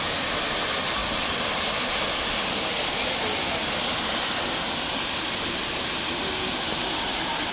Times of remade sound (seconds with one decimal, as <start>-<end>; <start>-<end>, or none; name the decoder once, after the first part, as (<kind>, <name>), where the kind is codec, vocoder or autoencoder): none